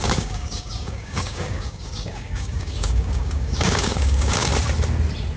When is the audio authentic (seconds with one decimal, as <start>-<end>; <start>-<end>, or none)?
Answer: 4.5-5.4